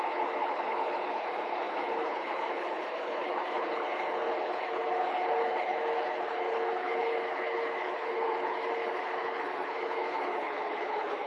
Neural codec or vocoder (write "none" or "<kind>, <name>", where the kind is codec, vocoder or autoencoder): codec, HILCodec